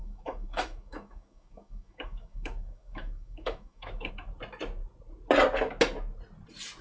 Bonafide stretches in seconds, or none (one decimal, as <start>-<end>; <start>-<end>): 4.1-6.8